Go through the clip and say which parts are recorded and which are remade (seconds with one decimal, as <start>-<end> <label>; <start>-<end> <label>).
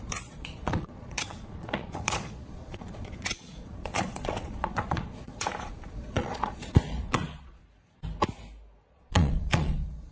0.0-7.6 remade; 7.6-8.9 recorded; 8.9-10.1 remade